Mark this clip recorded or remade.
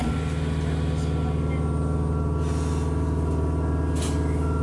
recorded